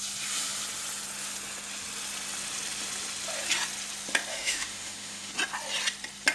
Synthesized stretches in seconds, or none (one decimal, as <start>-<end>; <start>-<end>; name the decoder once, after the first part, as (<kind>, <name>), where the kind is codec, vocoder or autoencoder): 4.3-5.3 (autoencoder, DAC-VAE)